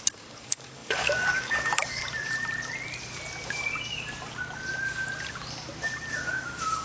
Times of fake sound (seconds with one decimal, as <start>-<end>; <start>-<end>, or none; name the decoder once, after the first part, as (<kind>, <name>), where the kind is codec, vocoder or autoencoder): 0.0-2.0 (codec, DAC); 6.1-6.8